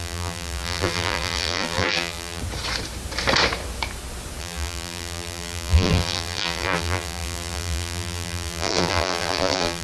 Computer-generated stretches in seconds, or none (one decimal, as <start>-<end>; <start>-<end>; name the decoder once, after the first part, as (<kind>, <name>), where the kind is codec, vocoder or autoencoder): 0.0-2.4 (vocoder, BigVGAN v2); 4.4-9.8